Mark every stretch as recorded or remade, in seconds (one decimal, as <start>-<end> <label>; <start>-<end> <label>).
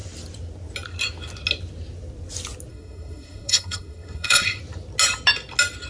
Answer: 0.0-2.7 recorded; 2.7-4.6 remade; 4.6-5.9 recorded